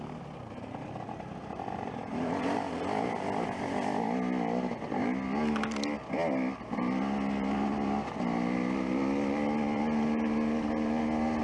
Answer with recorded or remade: recorded